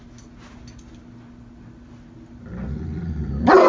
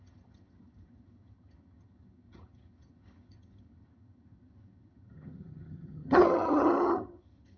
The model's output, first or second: second